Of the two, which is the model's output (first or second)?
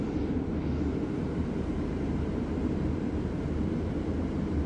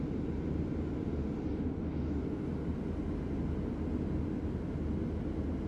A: first